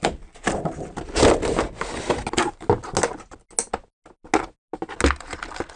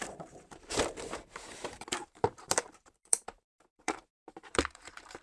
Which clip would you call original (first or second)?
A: first